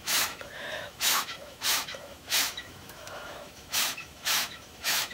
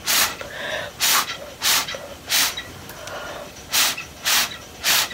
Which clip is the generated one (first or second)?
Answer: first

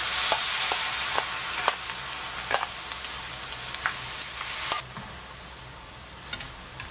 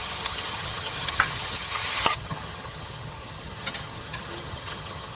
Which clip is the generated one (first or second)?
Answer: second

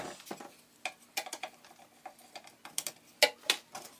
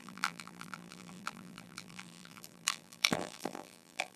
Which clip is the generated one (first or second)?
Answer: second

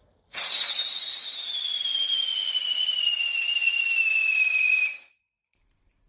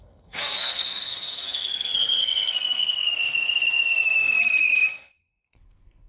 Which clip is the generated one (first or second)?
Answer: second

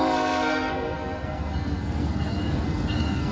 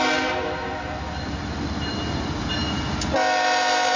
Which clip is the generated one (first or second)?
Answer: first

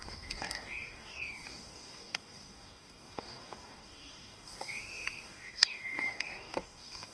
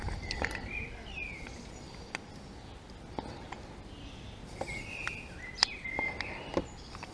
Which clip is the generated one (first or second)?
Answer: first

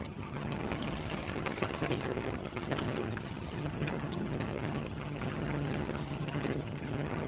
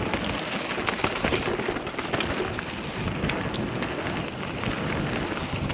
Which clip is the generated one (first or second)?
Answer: first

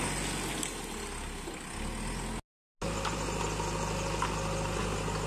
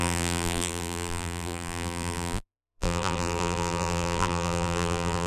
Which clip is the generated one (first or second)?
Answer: second